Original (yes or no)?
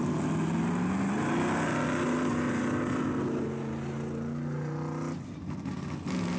yes